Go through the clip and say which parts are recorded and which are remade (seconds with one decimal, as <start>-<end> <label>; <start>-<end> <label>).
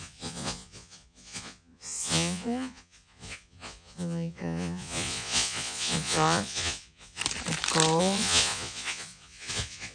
0.0-7.2 remade; 7.2-8.0 recorded; 8.0-9.9 remade